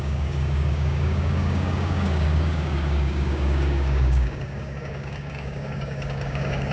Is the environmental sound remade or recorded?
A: remade